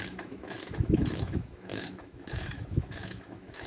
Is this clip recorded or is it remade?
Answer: remade